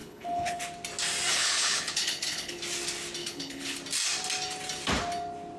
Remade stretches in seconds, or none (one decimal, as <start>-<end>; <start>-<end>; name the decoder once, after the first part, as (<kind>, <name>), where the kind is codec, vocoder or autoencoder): 0.0-0.6 (codec, HILCodec); 1.3-2.6; 3.2-3.8